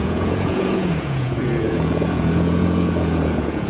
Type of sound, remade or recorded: remade